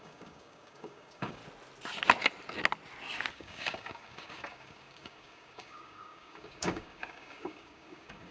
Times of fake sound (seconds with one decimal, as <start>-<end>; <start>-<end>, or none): 0.0-1.4; 3.3-8.3